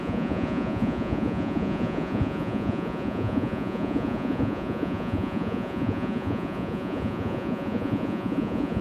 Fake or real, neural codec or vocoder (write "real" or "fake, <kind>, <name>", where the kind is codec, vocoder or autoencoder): fake, vocoder, Vocos